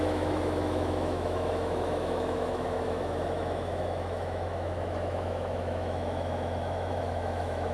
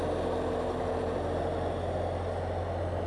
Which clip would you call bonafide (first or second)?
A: second